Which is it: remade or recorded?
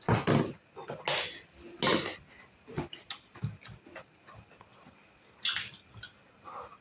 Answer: recorded